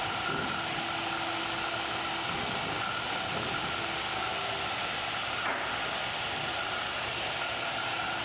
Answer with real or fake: real